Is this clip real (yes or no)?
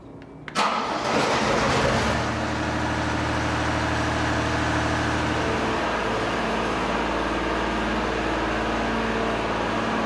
yes